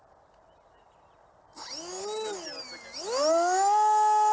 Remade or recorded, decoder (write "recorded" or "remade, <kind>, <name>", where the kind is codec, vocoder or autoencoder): recorded